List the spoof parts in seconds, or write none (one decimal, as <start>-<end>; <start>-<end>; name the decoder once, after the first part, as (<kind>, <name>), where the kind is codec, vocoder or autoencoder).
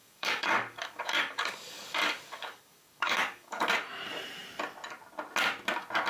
0.0-3.7 (codec, DAC)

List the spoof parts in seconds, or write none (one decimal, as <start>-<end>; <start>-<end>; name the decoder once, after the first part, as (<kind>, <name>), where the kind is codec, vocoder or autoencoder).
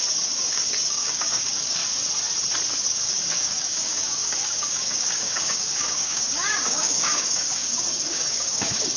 0.0-1.8 (codec, DAC); 2.9-9.0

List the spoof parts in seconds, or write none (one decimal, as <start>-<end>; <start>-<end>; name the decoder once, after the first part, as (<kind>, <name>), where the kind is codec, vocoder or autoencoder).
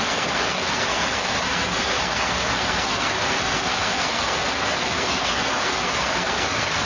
0.0-6.9 (codec, SNAC)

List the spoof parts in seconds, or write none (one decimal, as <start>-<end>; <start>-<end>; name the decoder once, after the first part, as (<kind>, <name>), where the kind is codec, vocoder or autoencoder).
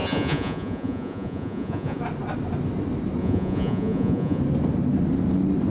0.0-2.0 (vocoder, Vocos); 3.2-4.4